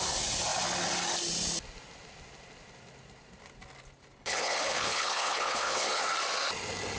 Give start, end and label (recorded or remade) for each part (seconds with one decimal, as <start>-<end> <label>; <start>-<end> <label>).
0.0-4.2 recorded; 4.2-6.0 remade; 6.0-7.0 recorded